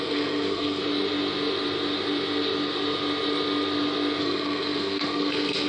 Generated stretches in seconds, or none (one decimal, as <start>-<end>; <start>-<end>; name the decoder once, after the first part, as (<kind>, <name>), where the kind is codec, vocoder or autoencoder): 0.0-0.8 (codec, SNAC); 4.2-5.7